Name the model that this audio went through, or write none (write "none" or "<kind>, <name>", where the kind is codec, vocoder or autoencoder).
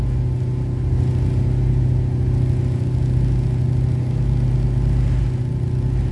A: none